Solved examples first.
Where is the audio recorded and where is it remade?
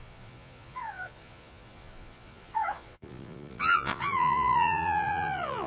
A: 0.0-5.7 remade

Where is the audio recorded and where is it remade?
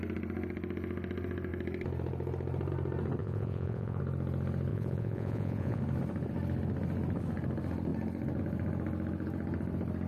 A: 0.0-3.2 recorded; 3.2-4.0 remade; 4.0-4.7 recorded; 4.7-5.8 remade; 5.8-10.1 recorded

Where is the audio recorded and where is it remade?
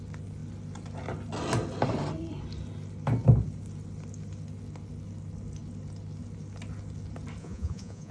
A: 0.0-7.4 recorded; 7.4-8.1 remade